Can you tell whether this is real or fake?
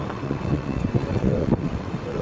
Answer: fake